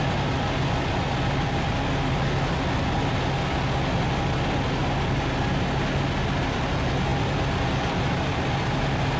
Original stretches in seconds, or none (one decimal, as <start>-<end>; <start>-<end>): 0.0-9.2